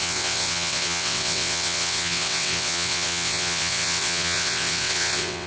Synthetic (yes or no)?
yes